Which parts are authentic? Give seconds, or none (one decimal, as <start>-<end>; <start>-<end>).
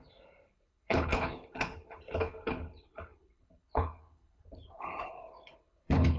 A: none